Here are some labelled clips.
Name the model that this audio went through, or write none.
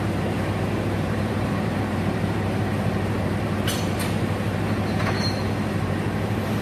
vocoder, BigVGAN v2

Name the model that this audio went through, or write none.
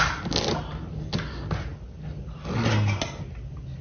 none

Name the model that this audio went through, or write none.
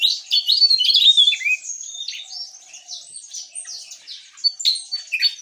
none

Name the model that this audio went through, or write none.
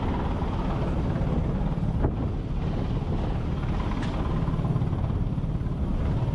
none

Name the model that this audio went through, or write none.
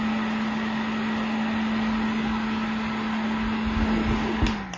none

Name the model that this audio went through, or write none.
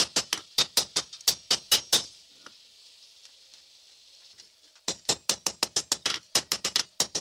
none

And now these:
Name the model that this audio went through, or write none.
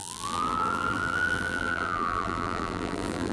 vocoder, BigVGAN v2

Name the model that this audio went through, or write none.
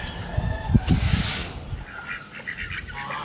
none